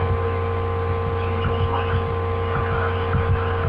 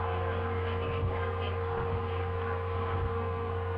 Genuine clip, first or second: first